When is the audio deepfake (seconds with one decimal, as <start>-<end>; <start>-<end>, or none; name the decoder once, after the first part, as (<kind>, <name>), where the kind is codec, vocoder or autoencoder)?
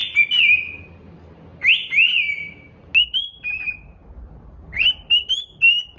none